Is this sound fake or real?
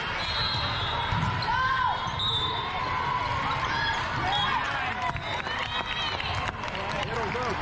real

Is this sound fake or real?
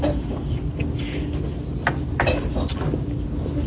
real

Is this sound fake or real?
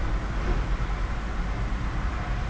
fake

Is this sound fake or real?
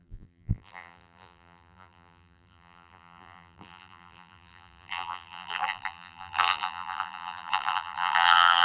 fake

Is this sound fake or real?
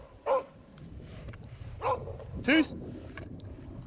fake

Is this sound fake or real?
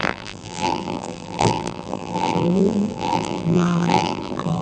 fake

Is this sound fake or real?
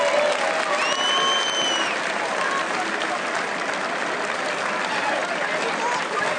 real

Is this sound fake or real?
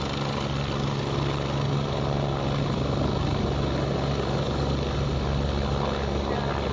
real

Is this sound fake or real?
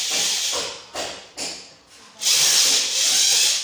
real